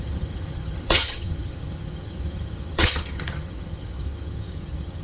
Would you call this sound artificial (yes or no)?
yes